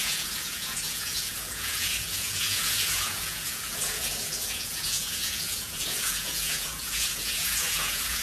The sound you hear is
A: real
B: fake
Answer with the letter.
B